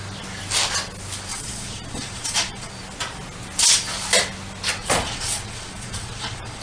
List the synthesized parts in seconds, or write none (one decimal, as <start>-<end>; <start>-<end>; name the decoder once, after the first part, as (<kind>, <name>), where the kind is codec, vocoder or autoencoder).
1.3-2.7 (vocoder, Vocos); 4.8-6.6